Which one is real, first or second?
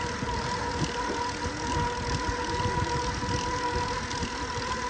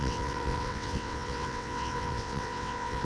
first